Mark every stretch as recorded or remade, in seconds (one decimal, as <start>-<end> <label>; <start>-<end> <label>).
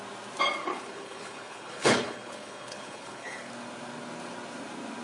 0.0-0.6 recorded; 0.6-3.5 remade; 3.5-5.0 recorded